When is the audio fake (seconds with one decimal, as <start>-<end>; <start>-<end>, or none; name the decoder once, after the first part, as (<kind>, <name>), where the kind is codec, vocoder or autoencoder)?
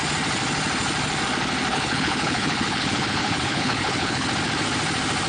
1.7-4.3 (codec, HILCodec)